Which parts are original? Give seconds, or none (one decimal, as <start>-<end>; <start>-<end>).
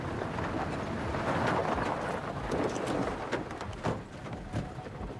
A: 0.0-5.2